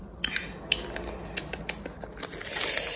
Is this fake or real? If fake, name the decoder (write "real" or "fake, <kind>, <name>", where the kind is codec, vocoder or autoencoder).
real